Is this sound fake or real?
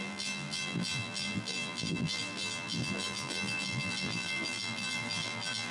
fake